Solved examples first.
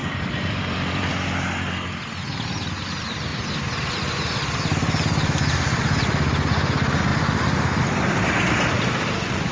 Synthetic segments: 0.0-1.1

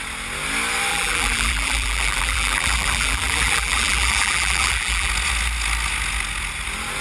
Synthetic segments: 0.9-5.1

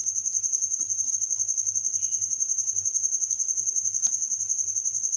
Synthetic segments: 0.0-1.1; 2.1-4.7

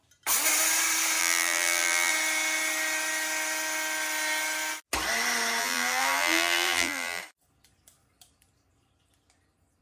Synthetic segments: 1.2-2.1; 5.6-7.2

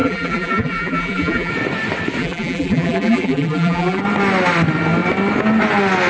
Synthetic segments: 0.0-1.5; 2.2-4.0

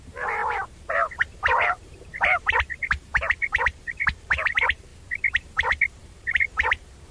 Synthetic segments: 0.0-4.9; 6.0-7.1